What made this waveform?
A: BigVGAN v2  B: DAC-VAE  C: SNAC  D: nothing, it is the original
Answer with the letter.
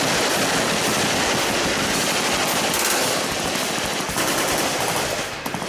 D